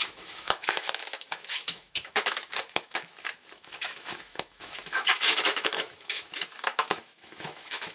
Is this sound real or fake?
fake